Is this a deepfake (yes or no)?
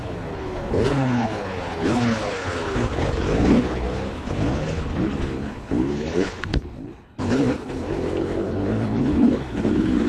yes